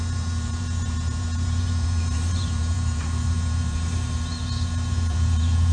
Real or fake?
fake